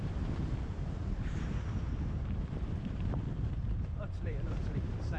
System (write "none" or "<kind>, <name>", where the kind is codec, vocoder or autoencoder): vocoder, BigVGAN v2